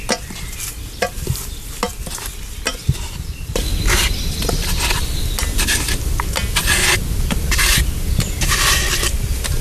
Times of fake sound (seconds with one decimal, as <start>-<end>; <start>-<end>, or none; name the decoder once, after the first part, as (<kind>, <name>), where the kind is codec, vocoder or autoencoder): 0.7-1.8 (vocoder, BigVGAN v2)